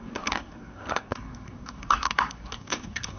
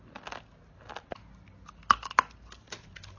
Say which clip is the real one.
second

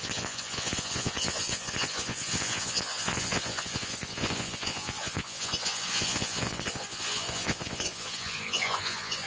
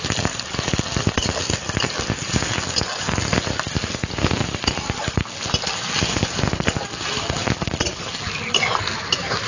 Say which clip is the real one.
second